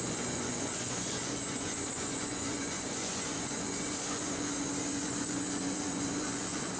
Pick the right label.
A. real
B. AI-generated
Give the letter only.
B